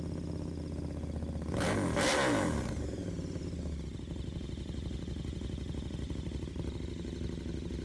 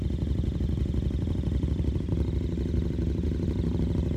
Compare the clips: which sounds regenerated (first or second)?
second